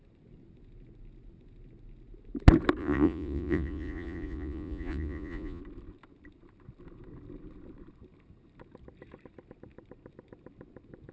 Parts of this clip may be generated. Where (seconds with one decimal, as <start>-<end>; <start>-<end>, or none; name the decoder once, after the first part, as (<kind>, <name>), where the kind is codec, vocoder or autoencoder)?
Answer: 2.8-5.6 (vocoder, Vocos)